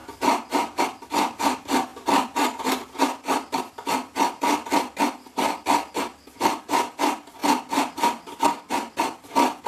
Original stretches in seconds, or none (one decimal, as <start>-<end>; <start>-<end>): 0.0-9.7